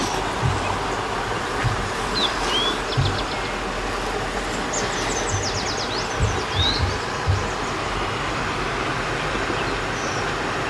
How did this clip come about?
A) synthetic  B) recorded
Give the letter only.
B